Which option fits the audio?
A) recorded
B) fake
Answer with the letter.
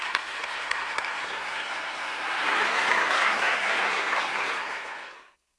B